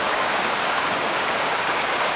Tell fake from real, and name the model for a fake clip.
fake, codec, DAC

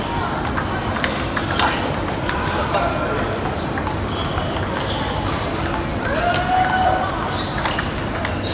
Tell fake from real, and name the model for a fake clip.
real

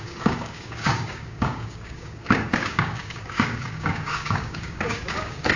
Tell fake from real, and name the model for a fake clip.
fake, codec, DAC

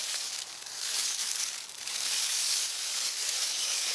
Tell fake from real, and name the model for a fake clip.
fake, codec, DAC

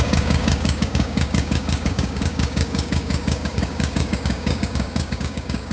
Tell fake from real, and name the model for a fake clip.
fake, codec, DAC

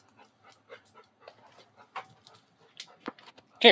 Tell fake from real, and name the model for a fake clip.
real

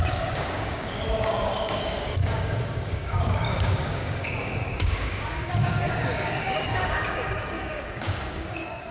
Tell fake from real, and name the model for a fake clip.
fake, codec, DAC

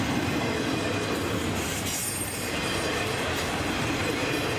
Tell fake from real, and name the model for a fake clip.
real